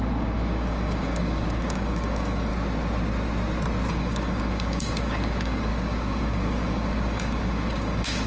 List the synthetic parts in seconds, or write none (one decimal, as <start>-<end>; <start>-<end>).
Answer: 0.0-2.5; 3.9-8.3